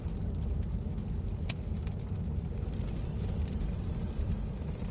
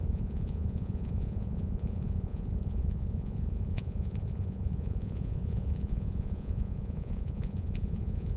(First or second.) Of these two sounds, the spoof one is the second